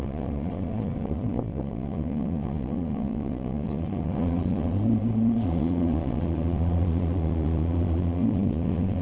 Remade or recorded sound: remade